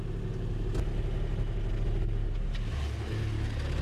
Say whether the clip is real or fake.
real